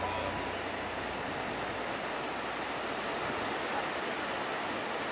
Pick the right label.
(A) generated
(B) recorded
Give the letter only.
B